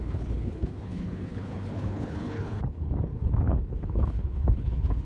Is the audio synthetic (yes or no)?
yes